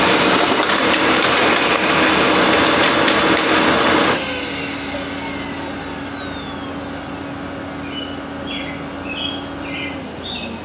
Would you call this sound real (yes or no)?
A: yes